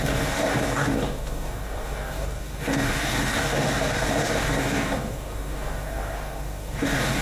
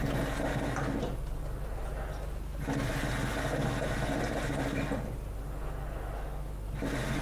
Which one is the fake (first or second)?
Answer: first